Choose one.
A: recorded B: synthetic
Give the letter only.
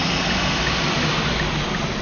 A